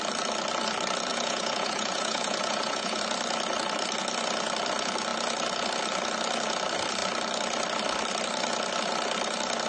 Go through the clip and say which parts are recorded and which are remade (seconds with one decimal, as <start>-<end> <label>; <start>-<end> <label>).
0.0-1.1 recorded; 1.1-3.0 remade; 3.0-9.7 recorded